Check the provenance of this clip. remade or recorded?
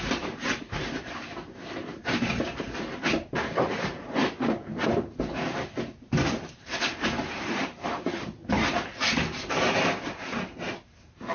remade